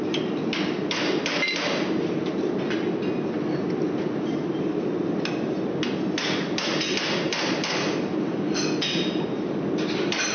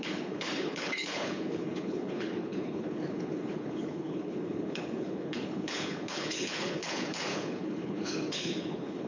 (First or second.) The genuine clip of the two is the first